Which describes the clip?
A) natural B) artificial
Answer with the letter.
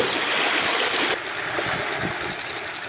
B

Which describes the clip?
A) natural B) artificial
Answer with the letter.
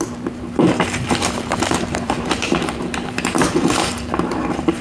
B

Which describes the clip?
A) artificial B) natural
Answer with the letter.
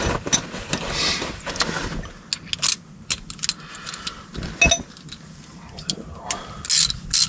B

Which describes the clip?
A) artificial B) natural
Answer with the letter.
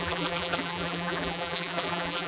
A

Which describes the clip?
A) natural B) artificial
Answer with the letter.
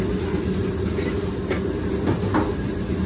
A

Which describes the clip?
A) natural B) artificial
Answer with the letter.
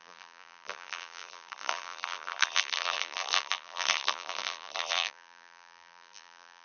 B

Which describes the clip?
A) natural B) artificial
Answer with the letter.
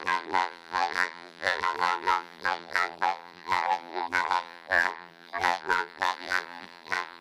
B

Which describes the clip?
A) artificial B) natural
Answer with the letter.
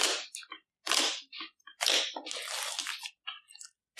B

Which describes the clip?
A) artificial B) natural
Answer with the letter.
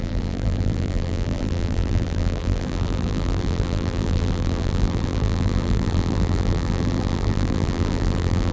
A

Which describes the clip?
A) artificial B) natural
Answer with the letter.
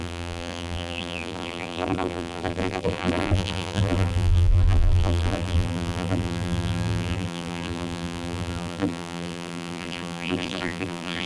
A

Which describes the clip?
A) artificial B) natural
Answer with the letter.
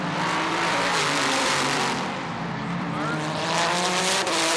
A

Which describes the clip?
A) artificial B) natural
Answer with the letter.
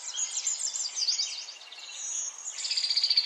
B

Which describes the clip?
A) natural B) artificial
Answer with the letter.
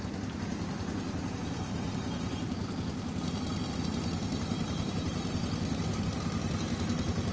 A